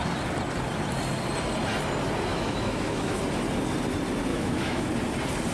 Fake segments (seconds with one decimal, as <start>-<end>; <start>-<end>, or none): 2.3-3.2; 4.3-4.9